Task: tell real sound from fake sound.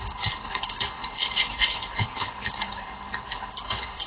fake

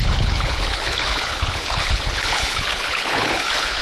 fake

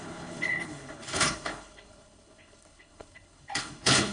fake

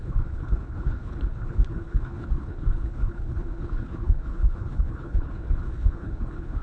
fake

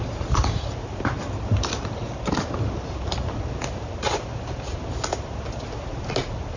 real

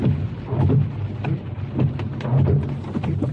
real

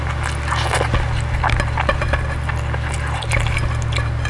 real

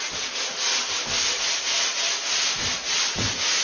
real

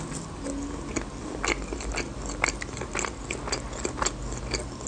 real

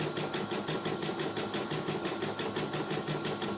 real